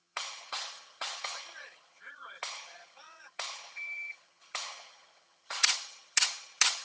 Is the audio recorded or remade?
remade